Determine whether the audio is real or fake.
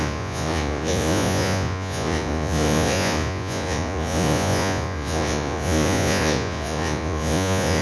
fake